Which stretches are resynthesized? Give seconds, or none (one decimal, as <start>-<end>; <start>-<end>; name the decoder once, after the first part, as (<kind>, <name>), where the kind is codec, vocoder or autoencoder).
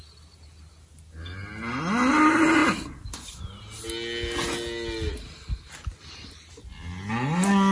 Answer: none